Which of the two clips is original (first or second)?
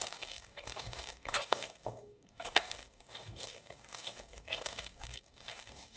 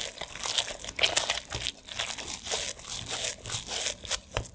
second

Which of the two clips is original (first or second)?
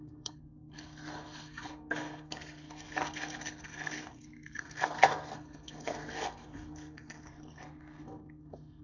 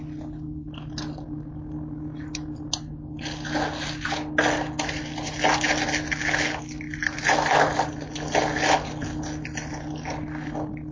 second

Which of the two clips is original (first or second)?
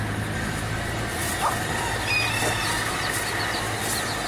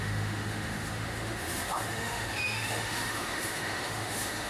first